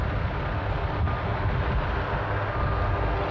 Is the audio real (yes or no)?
yes